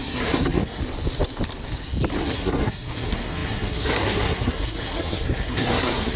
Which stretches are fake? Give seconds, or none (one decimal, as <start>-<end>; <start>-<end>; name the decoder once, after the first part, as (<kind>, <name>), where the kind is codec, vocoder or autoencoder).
0.0-0.8 (codec, SNAC); 2.2-6.2